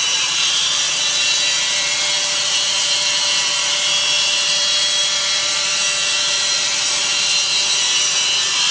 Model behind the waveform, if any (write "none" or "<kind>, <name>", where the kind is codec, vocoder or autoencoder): vocoder, BigVGAN v2